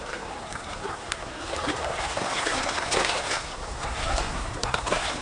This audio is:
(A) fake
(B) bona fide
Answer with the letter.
A